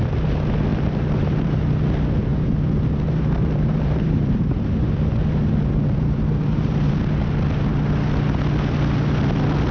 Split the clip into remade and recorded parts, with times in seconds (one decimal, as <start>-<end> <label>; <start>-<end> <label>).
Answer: 0.0-0.7 recorded; 0.7-1.6 remade; 1.6-2.3 recorded; 2.3-6.9 remade; 6.9-9.7 recorded